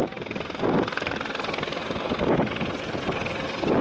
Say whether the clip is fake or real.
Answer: real